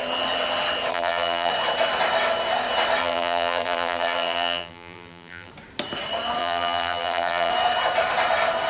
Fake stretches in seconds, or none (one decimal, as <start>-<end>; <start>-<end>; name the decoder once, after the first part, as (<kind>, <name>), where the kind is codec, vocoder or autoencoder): 0.9-1.5 (vocoder, BigVGAN v2); 3.0-5.5; 6.4-7.5

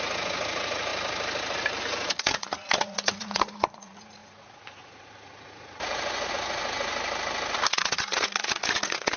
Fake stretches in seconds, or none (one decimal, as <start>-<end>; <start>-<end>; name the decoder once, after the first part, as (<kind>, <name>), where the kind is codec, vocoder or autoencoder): 0.0-0.9 (vocoder, Vocos); 1.8-6.9; 7.7-9.2

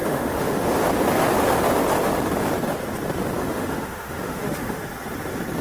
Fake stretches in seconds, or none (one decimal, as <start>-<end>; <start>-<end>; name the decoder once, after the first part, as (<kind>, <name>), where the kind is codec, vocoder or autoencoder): 0.0-0.7 (autoencoder, DAC-VAE); 3.4-4.8

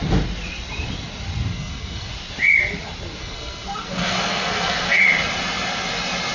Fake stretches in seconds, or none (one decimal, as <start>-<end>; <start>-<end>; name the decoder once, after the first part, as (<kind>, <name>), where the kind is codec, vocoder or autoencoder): 1.5-2.1 (codec, SNAC); 3.2-5.0